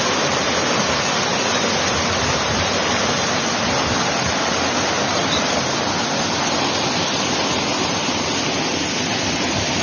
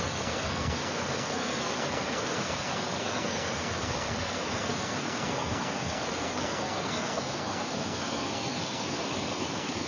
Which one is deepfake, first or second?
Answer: second